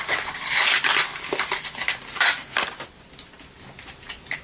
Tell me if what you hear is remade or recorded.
recorded